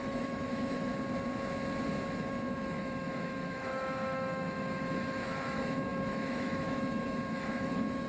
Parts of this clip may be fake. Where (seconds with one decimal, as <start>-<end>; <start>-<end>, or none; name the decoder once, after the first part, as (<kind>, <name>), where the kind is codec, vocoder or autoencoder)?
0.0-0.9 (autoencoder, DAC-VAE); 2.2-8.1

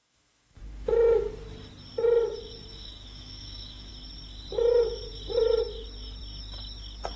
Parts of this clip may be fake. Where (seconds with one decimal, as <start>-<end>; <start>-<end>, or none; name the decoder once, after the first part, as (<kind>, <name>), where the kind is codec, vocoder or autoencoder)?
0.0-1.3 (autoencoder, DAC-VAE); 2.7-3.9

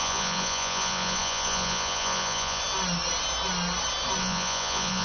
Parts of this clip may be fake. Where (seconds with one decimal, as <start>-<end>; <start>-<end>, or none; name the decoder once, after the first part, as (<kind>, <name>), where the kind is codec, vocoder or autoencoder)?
0.0-2.6 (vocoder, Vocos); 4.2-5.0

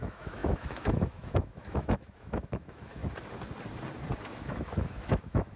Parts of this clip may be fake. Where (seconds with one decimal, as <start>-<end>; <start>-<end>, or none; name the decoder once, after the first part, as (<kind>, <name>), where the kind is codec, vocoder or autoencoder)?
0.0-3.0 (autoencoder, DAC-VAE); 4.2-5.6

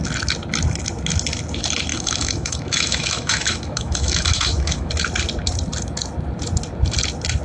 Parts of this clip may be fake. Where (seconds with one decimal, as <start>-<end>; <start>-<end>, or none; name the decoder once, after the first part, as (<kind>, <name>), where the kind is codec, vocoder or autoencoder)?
1.9-4.9 (autoencoder, DAC-VAE)

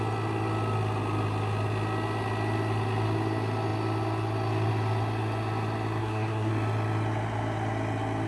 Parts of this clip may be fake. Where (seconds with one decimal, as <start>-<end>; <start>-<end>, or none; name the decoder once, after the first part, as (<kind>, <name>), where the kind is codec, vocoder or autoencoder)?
6.0-6.5 (codec, SNAC)